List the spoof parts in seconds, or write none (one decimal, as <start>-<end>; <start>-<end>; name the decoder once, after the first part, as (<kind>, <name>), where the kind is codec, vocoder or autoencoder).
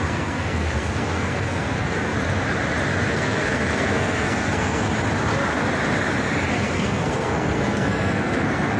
0.0-2.1 (codec, SNAC); 3.1-4.9; 6.5-8.8